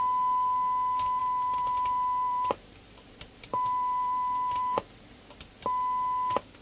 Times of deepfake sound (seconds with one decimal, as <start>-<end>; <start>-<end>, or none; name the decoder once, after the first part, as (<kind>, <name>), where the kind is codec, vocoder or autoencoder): 1.2-5.2 (vocoder, BigVGAN v2)